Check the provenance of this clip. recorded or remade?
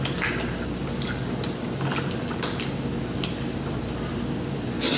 recorded